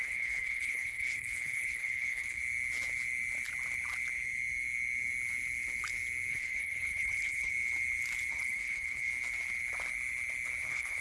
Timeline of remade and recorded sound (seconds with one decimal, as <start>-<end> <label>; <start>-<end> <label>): 0.0-2.4 remade; 2.4-6.3 recorded; 6.3-7.5 remade; 7.5-8.3 recorded; 8.3-9.1 remade; 9.1-10.6 recorded; 10.6-11.0 remade